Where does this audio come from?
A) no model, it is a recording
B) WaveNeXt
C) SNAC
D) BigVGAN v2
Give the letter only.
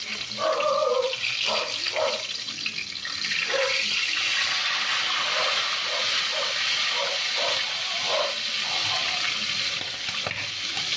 A